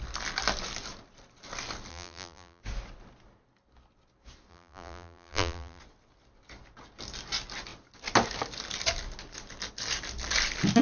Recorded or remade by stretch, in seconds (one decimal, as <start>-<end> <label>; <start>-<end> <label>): 0.0-1.9 recorded; 1.9-2.6 remade; 2.6-4.5 recorded; 4.5-5.8 remade; 5.8-10.8 recorded